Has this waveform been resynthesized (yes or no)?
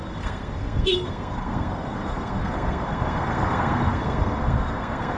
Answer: yes